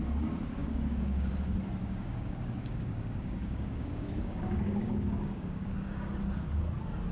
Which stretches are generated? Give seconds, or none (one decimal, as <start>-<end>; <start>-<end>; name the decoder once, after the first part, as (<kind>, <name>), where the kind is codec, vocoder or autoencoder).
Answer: 0.6-1.3 (codec, DAC); 1.8-6.1